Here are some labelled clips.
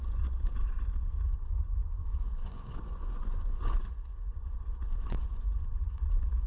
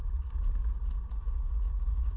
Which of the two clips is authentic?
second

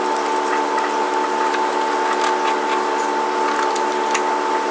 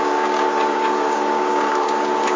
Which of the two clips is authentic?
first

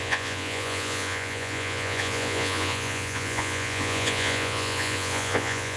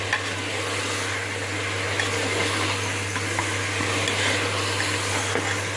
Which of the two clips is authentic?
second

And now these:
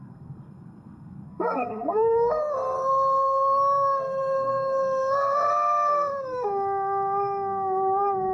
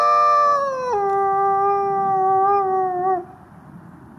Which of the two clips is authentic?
second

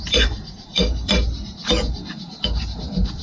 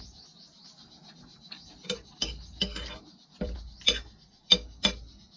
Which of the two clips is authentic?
second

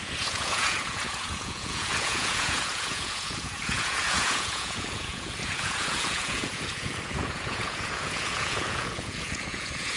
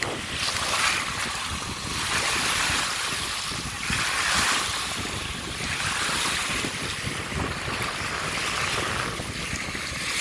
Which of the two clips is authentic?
second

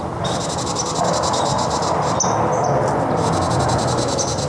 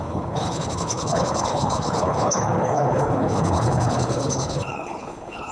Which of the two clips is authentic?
first